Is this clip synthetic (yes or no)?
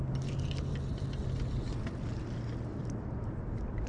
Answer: no